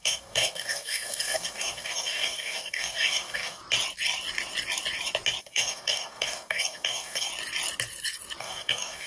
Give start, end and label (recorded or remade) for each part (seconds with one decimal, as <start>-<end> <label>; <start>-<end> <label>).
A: 0.0-3.6 remade; 3.6-5.4 recorded; 5.4-7.3 remade; 7.3-8.4 recorded; 8.4-9.1 remade